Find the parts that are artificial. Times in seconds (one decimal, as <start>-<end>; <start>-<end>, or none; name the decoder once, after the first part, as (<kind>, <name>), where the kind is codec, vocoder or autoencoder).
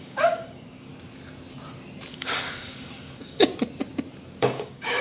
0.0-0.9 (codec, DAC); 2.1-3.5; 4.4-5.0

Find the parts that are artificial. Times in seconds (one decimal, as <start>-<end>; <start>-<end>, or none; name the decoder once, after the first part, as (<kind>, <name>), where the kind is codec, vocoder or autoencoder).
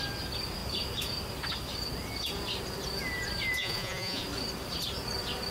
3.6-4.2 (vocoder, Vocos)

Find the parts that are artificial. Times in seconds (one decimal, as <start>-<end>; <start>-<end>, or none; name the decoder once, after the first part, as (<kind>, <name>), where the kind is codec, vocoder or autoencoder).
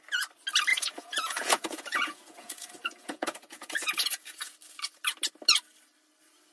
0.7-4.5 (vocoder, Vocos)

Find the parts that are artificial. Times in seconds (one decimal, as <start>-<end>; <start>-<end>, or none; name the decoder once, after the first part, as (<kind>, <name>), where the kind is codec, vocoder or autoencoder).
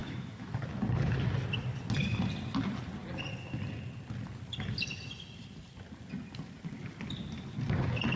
0.0-0.5 (autoencoder, DAC-VAE)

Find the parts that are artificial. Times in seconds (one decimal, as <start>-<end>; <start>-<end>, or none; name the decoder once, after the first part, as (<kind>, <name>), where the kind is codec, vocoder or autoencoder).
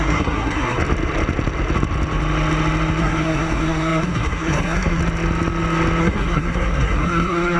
0.0-0.8 (codec, SNAC); 3.0-5.0; 6.0-7.6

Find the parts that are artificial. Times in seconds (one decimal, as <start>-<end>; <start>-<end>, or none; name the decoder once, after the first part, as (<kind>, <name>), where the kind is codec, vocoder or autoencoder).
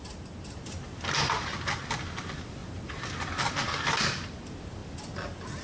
none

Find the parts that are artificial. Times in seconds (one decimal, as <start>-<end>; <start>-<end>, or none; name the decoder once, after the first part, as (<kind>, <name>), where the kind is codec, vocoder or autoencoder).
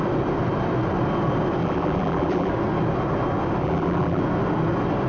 1.6-2.5 (vocoder, BigVGAN v2); 3.6-4.2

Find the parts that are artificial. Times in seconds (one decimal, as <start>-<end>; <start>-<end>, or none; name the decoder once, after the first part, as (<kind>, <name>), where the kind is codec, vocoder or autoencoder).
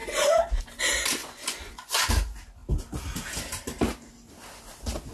1.2-2.1 (vocoder, Vocos)